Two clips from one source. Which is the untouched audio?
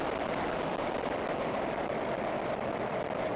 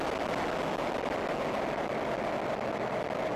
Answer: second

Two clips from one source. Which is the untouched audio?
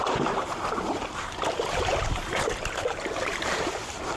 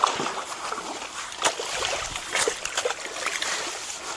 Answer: second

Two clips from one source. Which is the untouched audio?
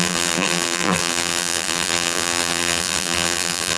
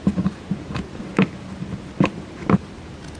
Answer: second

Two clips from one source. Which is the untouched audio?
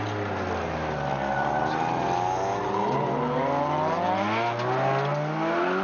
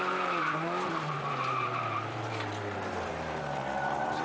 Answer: first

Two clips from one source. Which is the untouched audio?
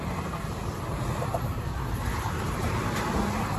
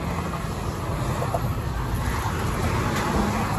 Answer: second